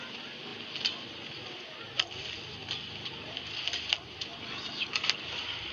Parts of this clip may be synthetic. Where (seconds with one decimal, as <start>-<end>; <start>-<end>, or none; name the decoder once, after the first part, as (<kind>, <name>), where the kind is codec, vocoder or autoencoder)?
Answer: none